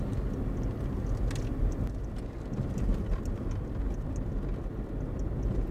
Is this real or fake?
real